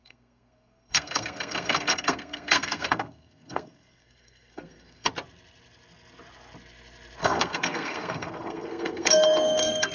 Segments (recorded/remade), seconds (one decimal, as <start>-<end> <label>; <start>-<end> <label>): 0.0-5.1 remade; 5.1-7.2 recorded; 7.2-9.9 remade

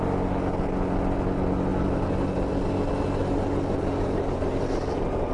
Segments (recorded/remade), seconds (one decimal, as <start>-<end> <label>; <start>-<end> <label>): 0.0-5.3 recorded

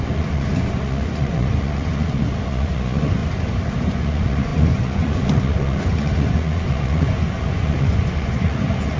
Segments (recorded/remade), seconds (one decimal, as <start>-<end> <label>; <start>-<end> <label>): 0.0-3.2 remade; 3.2-3.9 recorded; 3.9-9.0 remade

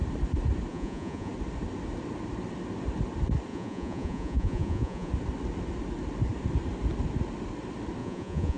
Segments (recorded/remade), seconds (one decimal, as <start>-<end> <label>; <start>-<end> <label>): 0.0-0.7 recorded; 0.7-1.3 remade; 1.3-3.5 recorded; 3.5-5.1 remade; 5.1-8.0 recorded; 8.0-8.6 remade